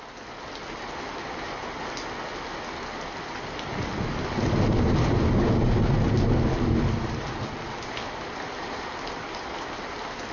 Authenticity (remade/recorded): recorded